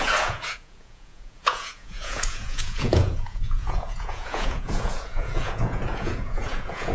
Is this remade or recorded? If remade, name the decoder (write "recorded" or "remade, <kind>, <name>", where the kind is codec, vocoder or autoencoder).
remade, vocoder, Vocos